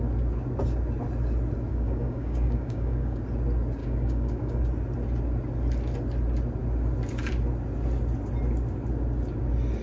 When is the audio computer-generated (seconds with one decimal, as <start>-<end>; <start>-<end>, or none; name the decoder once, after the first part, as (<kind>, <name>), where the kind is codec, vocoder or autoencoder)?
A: 1.7-3.2 (codec, DAC); 3.8-4.6